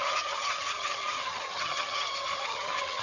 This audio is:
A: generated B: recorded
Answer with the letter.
A